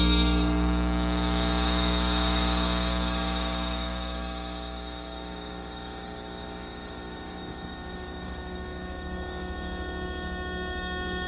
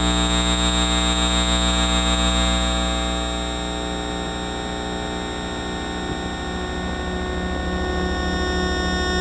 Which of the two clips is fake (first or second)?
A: first